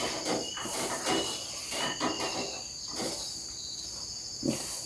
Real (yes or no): yes